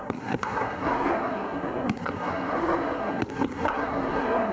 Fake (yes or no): yes